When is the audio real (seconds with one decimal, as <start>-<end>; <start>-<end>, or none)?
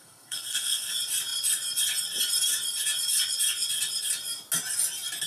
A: 0.9-5.3